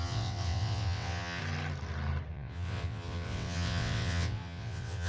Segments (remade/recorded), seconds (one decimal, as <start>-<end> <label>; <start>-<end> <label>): 0.0-1.4 remade; 1.4-2.3 recorded; 2.3-5.1 remade